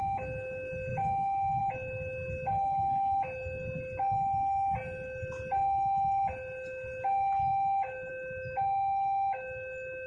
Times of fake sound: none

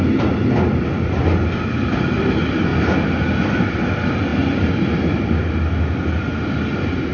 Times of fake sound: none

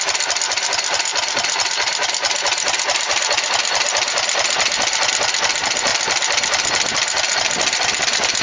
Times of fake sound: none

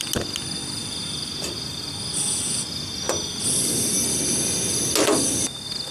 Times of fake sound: none